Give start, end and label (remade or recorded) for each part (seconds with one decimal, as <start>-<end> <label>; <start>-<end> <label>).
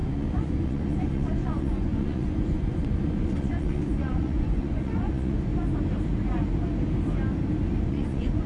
0.0-5.5 remade; 5.5-7.8 recorded; 7.8-8.5 remade